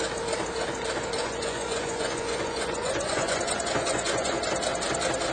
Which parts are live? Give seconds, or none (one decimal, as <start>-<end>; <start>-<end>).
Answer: 0.0-1.2; 4.4-5.3